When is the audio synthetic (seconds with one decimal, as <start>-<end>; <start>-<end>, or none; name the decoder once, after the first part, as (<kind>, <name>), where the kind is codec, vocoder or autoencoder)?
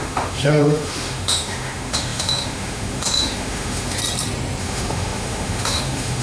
0.0-4.0 (autoencoder, DAC-VAE); 4.6-6.2